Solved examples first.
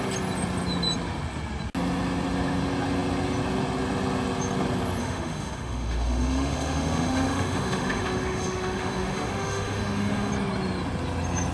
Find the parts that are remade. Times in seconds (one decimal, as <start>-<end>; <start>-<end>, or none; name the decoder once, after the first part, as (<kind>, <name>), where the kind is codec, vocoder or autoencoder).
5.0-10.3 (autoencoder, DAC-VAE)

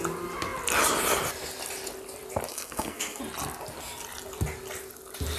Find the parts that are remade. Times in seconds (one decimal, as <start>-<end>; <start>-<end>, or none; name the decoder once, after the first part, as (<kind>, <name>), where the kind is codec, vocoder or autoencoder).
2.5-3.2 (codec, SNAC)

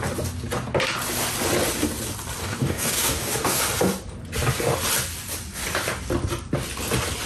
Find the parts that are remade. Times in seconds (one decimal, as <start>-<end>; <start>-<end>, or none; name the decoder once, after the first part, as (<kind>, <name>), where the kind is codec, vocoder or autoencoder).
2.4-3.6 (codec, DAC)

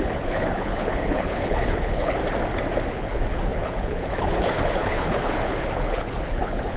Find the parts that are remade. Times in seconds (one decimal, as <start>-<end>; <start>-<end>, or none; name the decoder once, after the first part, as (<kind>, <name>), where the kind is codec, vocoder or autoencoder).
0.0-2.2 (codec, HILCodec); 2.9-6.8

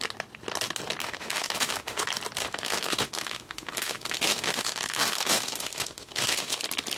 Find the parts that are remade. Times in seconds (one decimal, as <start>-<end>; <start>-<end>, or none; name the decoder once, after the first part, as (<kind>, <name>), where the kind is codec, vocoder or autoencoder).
1.0-2.0 (autoencoder, DAC-VAE); 2.4-6.6

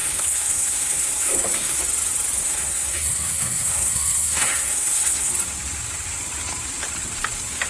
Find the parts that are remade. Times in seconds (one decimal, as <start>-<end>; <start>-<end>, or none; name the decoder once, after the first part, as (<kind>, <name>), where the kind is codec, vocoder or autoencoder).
0.0-1.8 (codec, SNAC); 2.4-5.3

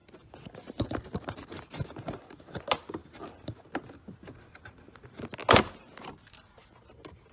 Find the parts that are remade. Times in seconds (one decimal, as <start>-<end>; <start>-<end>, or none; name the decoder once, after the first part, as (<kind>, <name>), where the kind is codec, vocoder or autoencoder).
none

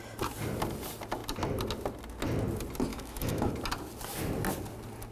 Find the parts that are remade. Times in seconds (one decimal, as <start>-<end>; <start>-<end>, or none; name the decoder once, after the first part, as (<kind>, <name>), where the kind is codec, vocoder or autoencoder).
2.9-3.5 (autoencoder, DAC-VAE)